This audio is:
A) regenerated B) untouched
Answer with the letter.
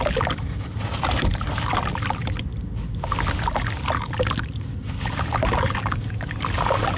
B